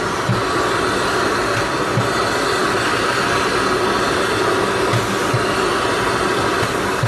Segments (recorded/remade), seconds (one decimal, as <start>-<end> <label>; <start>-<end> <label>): 0.0-7.1 recorded